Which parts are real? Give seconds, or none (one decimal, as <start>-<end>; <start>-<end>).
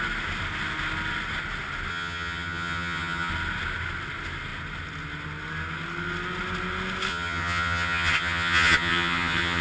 0.0-1.9; 3.3-7.1